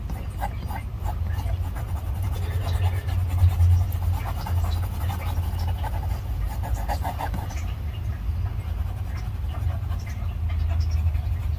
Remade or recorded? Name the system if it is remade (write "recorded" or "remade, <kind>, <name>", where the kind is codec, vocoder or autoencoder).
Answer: recorded